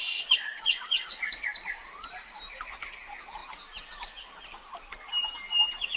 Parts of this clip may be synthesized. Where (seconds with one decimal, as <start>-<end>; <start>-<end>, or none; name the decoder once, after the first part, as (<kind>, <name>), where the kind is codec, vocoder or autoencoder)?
1.5-2.7 (vocoder, BigVGAN v2)